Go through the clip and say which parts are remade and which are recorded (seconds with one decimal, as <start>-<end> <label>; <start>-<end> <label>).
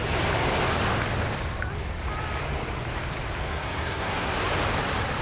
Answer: 0.0-3.5 recorded; 3.5-4.3 remade; 4.3-5.2 recorded